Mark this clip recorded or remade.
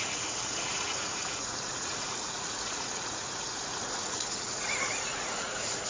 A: remade